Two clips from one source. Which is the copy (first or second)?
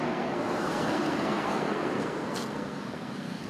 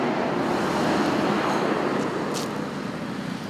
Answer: first